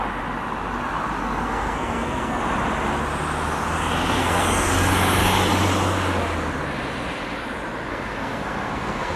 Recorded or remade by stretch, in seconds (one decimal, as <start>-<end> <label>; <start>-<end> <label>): 0.0-1.2 recorded; 1.2-2.4 remade; 2.4-4.2 recorded; 4.2-4.7 remade; 4.7-7.9 recorded; 7.9-9.2 remade